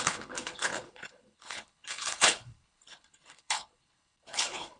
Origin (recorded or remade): remade